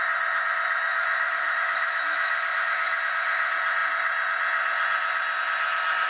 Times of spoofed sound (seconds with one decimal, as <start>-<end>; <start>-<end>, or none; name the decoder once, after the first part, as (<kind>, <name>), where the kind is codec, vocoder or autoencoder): 0.9-3.0 (autoencoder, DAC-VAE)

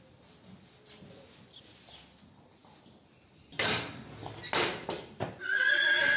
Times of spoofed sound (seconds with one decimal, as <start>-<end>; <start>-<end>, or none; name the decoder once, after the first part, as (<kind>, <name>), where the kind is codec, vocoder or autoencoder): none

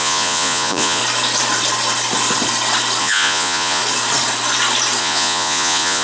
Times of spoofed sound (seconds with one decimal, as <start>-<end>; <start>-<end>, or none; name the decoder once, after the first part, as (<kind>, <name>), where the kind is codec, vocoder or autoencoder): 0.0-1.0 (vocoder, Vocos); 3.0-3.8; 5.0-6.0

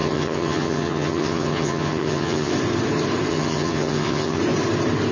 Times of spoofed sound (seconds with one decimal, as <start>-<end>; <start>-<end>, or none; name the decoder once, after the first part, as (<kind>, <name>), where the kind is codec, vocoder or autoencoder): 0.0-2.5 (vocoder, HiFi-GAN); 3.3-4.4

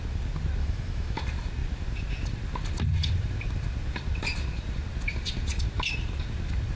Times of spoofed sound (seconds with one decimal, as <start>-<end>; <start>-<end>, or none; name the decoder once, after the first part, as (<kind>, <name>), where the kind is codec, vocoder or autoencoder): 0.6-1.2 (autoencoder, DAC-VAE)

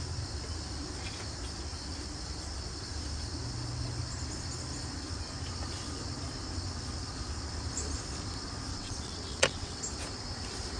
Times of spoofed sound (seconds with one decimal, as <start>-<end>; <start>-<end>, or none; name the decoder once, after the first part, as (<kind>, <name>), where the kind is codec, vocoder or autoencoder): 8.7-9.8 (vocoder, WaveNeXt)

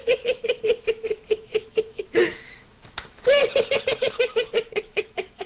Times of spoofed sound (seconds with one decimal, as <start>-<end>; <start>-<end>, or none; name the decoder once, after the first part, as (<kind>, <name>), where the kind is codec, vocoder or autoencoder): 0.0-3.4 (autoencoder, DAC-VAE); 4.0-5.5

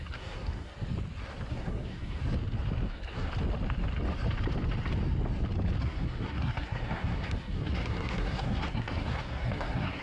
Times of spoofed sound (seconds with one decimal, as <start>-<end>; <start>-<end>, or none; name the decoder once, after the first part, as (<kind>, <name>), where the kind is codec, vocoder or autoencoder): 0.0-0.7 (codec, SNAC); 1.5-2.2; 2.9-3.3; 5.8-10.0